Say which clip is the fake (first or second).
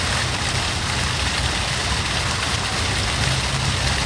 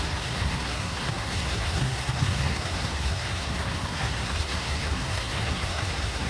second